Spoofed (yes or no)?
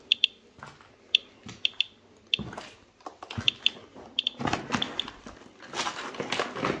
no